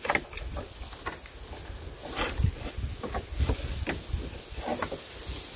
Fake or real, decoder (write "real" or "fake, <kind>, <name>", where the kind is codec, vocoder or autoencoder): real